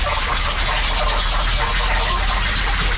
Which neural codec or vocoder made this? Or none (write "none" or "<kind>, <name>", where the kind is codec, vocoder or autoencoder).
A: none